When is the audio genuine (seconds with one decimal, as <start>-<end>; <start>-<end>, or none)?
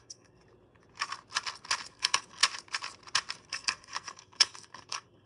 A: 0.4-1.9; 2.4-3.5